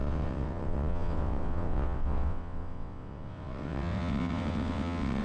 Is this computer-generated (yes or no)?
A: yes